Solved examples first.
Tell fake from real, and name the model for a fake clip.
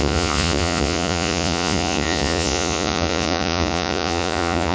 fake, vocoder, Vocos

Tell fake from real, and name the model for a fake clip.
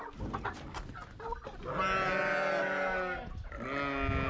real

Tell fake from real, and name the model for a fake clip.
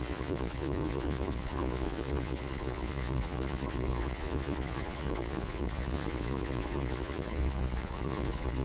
fake, vocoder, Vocos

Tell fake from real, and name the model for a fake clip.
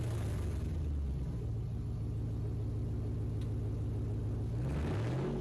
real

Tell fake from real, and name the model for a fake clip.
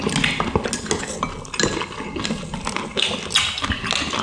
real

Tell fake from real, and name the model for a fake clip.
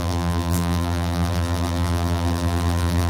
fake, vocoder, BigVGAN v2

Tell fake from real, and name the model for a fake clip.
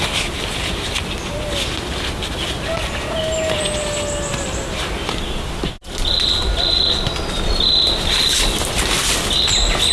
real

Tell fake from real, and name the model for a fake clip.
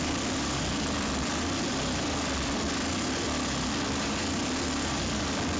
fake, vocoder, BigVGAN v2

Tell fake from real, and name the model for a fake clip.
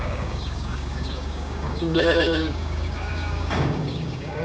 fake, codec, DAC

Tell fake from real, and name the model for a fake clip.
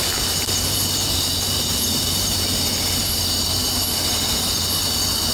fake, vocoder, BigVGAN v2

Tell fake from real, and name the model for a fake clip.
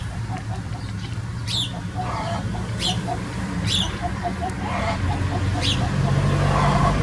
fake, vocoder, BigVGAN v2